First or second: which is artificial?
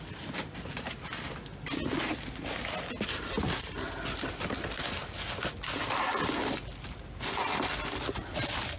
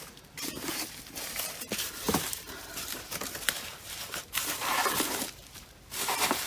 second